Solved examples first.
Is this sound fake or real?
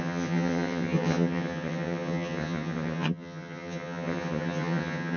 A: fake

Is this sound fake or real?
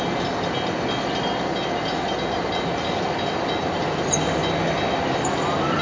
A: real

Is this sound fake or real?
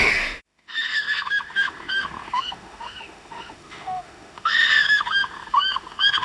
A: fake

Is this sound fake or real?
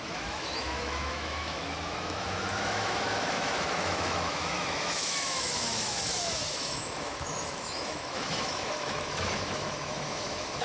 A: fake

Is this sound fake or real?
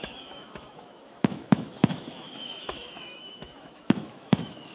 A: fake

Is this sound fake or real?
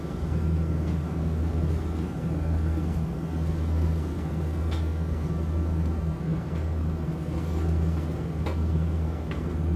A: fake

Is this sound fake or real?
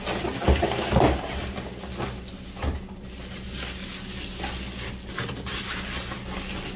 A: real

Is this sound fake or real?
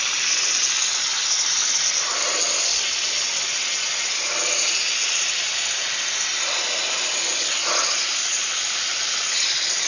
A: real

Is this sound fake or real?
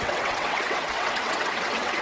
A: fake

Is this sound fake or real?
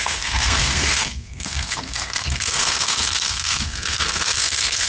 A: fake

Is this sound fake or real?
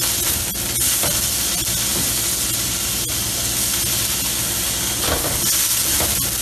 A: real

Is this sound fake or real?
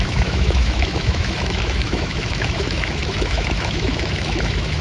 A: fake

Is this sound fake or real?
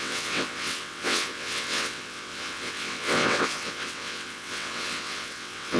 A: fake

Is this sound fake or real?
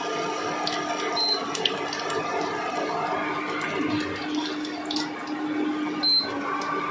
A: real